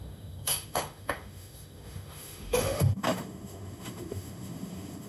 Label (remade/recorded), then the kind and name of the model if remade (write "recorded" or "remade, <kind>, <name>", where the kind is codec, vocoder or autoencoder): remade, autoencoder, DAC-VAE